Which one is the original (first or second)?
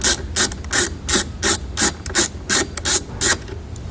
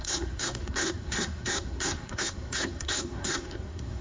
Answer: first